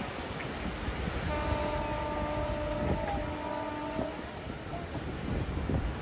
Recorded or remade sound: recorded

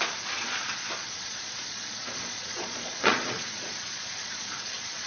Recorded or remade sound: remade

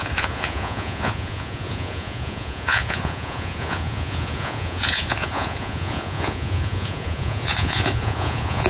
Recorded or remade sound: remade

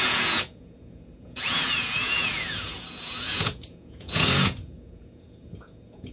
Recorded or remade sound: remade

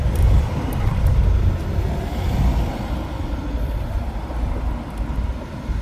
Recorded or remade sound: recorded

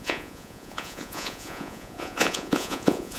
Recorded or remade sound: remade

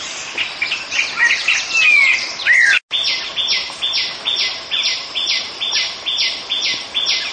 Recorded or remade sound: recorded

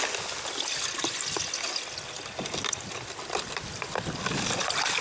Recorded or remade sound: recorded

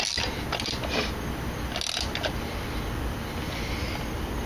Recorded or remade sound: recorded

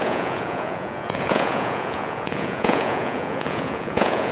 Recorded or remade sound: remade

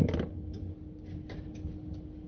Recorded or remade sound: recorded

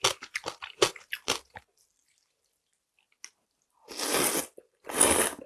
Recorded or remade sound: recorded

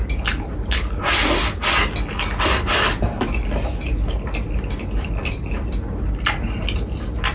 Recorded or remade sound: recorded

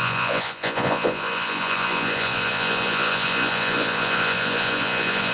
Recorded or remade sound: remade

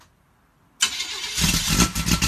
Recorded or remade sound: recorded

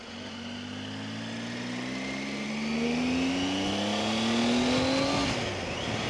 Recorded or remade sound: recorded